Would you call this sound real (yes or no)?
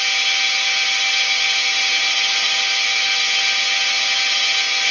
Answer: yes